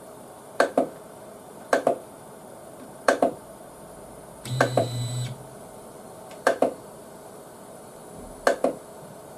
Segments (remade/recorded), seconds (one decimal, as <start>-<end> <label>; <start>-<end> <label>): 0.0-8.0 remade; 8.0-9.0 recorded; 9.0-9.4 remade